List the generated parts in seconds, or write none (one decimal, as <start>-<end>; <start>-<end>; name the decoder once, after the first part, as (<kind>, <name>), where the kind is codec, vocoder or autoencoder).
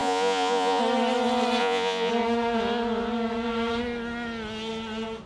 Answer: 0.0-0.8 (vocoder, Vocos); 1.6-2.1